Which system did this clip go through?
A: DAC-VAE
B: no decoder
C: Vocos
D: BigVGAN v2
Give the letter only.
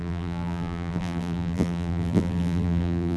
D